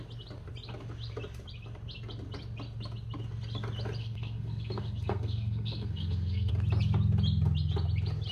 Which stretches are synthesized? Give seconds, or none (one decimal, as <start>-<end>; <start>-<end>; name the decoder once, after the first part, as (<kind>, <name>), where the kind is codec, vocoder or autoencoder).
4.0-6.5 (codec, SNAC)